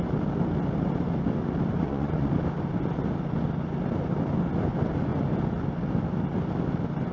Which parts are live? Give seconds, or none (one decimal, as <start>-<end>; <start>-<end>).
0.0-1.8; 2.3-7.1